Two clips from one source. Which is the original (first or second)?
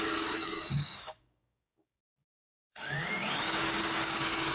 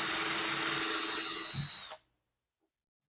second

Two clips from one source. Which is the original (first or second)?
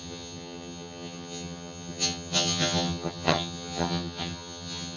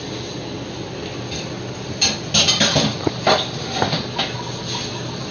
second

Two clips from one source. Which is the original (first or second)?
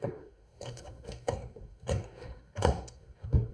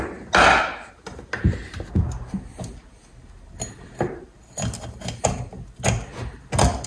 second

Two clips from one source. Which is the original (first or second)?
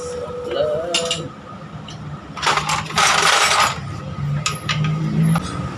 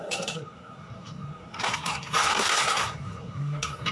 first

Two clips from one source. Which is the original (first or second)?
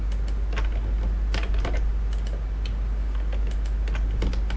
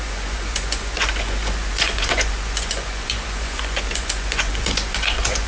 first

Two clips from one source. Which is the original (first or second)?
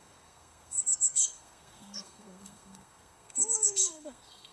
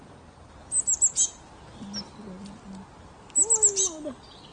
second